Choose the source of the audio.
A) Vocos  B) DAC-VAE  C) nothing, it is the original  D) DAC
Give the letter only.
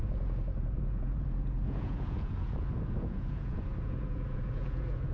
A